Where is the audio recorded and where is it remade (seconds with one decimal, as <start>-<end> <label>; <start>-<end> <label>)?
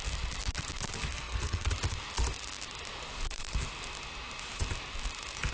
0.0-1.1 recorded; 1.1-1.7 remade; 1.7-5.5 recorded